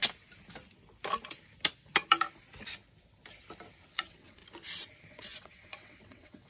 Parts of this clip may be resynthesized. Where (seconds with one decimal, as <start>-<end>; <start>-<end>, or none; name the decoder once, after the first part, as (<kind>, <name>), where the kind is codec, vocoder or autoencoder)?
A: 3.9-4.4 (vocoder, WaveNeXt); 5.1-6.5